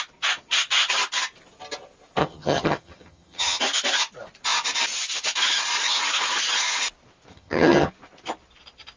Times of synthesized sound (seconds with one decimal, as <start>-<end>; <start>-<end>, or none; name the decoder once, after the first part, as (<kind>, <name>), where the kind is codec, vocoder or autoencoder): 2.2-3.6 (vocoder, HiFi-GAN); 7.3-7.9